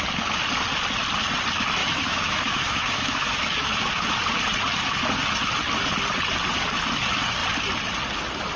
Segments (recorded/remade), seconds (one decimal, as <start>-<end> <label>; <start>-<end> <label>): 0.0-1.8 recorded; 1.8-4.1 remade; 4.1-8.6 recorded